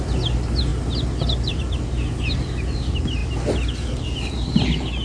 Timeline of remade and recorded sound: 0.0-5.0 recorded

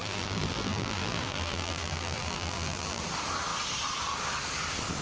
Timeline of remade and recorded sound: 0.0-3.0 remade; 3.0-5.0 recorded